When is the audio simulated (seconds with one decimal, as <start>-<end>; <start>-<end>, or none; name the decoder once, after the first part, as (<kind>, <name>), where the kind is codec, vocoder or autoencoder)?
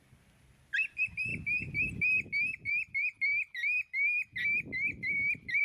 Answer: none